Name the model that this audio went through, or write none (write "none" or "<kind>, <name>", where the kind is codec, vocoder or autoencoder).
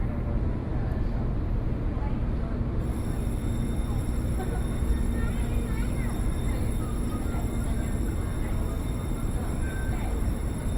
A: none